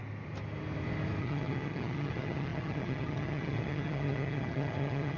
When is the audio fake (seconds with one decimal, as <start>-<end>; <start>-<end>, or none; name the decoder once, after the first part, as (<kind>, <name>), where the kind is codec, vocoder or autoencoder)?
1.2-5.2 (vocoder, HiFi-GAN)